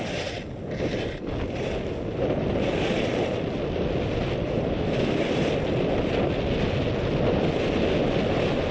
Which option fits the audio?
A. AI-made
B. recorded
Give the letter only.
B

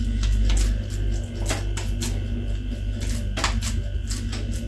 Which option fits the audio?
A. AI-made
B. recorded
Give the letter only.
B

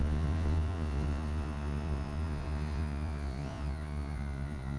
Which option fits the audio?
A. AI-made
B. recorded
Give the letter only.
A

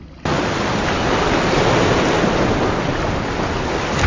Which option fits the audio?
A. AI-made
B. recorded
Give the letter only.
B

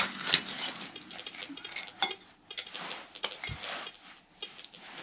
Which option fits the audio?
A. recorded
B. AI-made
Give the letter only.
A